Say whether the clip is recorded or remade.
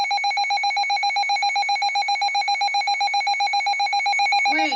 recorded